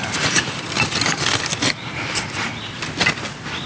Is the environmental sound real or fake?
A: real